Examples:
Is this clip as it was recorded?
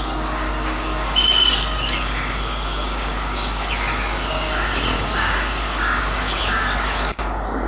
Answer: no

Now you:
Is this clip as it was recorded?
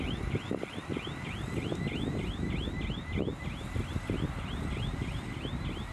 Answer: yes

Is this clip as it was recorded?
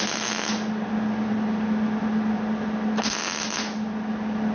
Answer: yes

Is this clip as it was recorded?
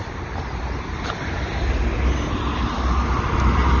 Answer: yes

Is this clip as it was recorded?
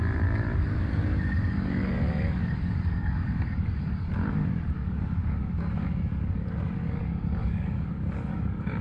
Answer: no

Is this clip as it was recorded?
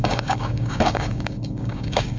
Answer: no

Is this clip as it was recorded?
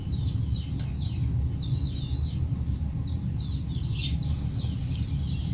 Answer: yes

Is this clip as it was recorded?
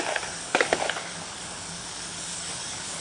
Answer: no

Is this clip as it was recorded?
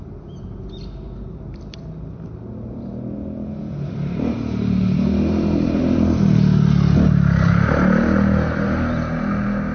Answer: yes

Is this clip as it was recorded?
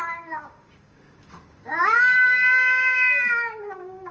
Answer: no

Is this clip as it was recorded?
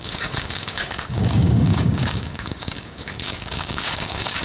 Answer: no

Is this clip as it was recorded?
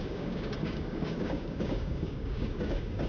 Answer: no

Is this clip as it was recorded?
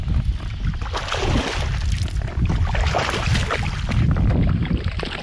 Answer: yes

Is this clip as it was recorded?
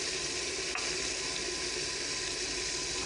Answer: yes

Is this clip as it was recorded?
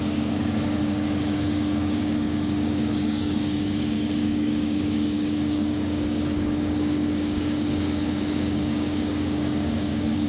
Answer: no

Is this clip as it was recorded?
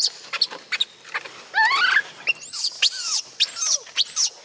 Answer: yes